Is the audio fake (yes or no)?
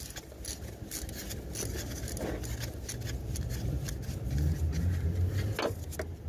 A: no